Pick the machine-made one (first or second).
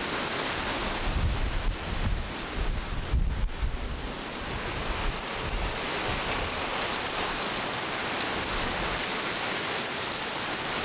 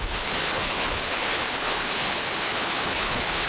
second